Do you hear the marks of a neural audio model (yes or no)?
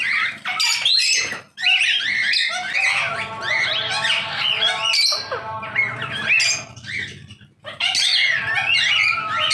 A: no